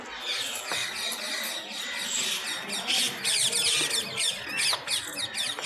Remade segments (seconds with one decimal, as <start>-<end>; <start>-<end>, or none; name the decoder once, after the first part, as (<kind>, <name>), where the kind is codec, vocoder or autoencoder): none